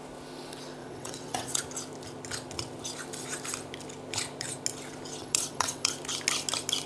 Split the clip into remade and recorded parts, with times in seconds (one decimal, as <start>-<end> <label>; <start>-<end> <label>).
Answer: 0.0-0.8 recorded; 0.8-1.6 remade; 1.6-5.2 recorded; 5.2-5.9 remade; 5.9-6.9 recorded